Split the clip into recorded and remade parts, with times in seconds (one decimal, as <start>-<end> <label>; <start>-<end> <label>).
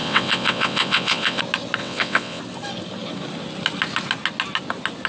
0.0-1.4 remade; 1.4-1.8 recorded; 1.8-2.4 remade; 2.4-5.1 recorded